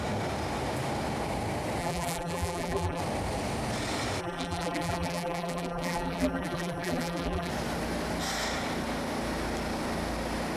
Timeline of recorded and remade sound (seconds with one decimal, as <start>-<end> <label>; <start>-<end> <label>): 0.0-1.8 recorded; 1.8-3.0 remade; 3.0-4.2 recorded; 4.2-7.5 remade; 7.5-10.6 recorded